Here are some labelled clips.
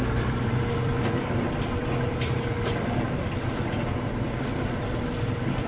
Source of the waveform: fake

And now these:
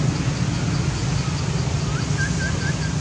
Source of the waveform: real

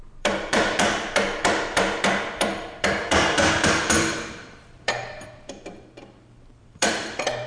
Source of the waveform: fake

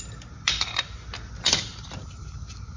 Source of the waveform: real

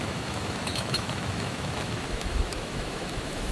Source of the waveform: fake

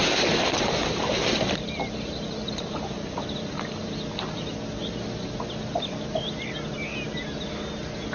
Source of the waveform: real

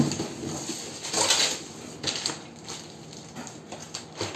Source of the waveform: real